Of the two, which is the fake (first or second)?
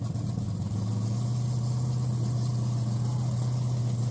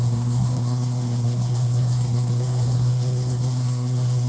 second